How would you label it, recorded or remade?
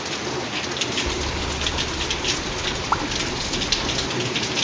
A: recorded